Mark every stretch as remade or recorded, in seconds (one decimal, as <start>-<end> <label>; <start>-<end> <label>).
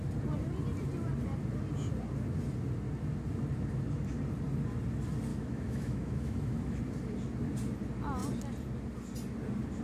0.0-5.3 recorded; 5.3-6.8 remade; 6.8-9.8 recorded